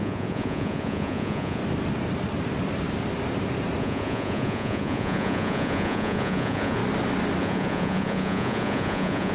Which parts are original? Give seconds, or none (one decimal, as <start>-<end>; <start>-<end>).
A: 1.6-3.8; 6.8-7.4